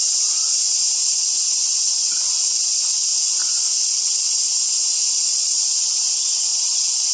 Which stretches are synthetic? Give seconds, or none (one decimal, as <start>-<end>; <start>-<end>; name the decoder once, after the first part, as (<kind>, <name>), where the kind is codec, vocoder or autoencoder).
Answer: none